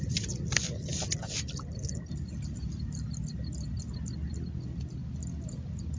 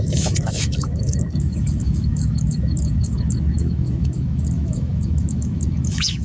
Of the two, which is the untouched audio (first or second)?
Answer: first